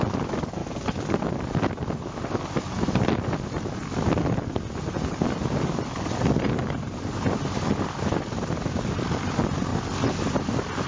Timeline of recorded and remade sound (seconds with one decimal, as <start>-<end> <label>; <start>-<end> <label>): 0.0-10.9 recorded